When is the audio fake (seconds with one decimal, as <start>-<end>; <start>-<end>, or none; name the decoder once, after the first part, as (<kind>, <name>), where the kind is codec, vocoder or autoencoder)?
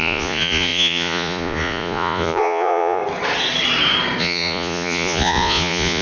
0.0-3.0 (vocoder, Vocos); 4.2-6.0